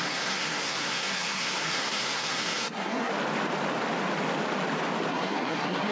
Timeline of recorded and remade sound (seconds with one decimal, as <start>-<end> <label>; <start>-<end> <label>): 0.0-3.1 remade; 3.1-5.1 recorded; 5.1-5.9 remade